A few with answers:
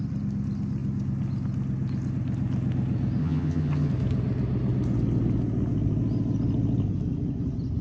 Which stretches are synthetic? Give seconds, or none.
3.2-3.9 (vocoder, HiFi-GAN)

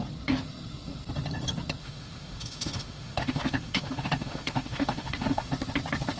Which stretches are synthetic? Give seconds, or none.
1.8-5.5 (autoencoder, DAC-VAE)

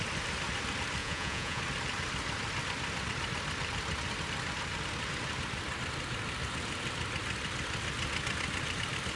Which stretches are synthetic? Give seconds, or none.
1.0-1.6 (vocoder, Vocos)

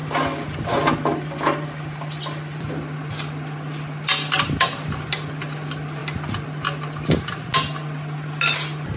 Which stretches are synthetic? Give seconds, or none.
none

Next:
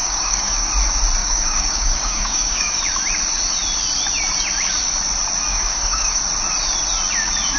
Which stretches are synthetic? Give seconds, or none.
0.0-0.7 (codec, DAC); 1.2-2.8; 5.5-6.2

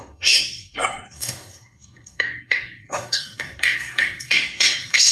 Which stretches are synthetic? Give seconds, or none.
0.0-5.1 (codec, SNAC)